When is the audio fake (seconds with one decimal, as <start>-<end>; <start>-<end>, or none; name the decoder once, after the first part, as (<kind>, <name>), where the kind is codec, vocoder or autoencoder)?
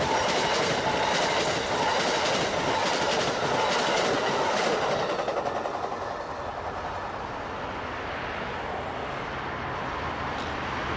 none